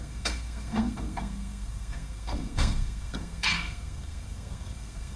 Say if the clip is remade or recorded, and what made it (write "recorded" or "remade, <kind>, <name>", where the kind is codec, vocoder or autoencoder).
remade, codec, SNAC